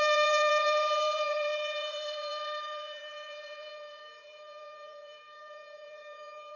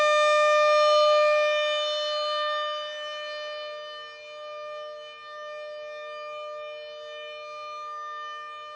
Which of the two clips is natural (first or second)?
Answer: second